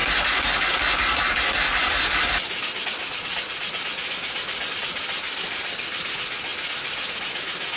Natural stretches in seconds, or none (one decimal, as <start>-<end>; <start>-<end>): 0.0-7.8